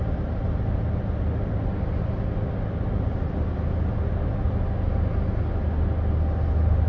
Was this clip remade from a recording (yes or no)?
no